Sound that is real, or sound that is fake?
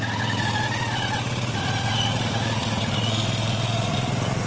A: fake